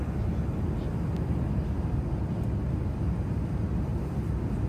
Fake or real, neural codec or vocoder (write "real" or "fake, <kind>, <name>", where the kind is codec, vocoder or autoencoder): real